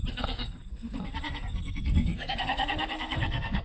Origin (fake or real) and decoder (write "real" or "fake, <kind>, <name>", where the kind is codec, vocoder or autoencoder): fake, codec, SNAC